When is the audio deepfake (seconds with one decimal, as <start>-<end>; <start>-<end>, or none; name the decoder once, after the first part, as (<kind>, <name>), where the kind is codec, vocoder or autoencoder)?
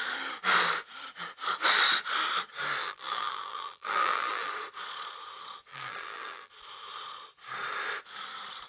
2.8-4.5 (vocoder, BigVGAN v2); 5.7-6.5